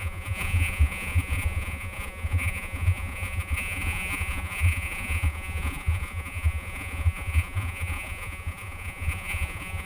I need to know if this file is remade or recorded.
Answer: remade